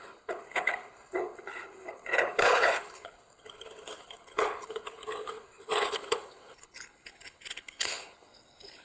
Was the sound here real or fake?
fake